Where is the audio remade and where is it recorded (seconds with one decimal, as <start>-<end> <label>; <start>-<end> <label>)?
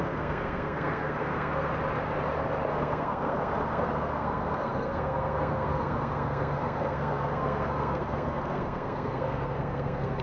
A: 0.0-1.7 remade; 1.7-2.7 recorded; 2.7-10.2 remade